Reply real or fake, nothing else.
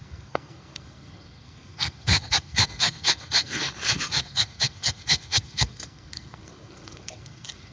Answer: fake